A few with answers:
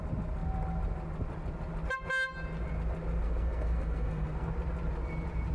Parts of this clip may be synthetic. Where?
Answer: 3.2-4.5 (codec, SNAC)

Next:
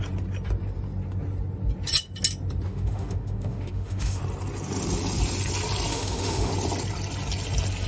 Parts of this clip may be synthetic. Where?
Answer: 2.7-4.2 (autoencoder, DAC-VAE); 5.9-6.5

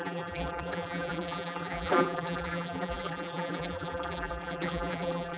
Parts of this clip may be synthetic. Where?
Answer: 0.0-5.4 (vocoder, BigVGAN v2)

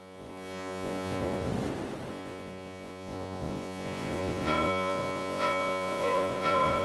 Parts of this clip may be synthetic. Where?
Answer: 0.0-1.5 (vocoder, Vocos); 2.1-6.8

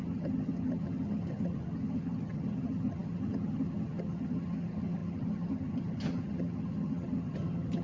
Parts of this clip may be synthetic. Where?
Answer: 0.0-7.8 (vocoder, HiFi-GAN)

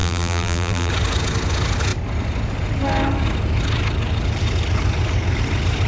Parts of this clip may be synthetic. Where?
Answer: 0.0-0.9 (vocoder, BigVGAN v2)

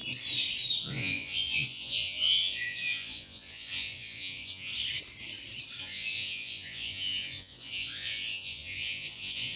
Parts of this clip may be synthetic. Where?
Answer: 0.8-4.7 (vocoder, Vocos); 5.8-9.6

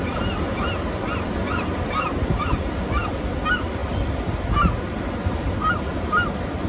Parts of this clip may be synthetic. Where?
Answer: none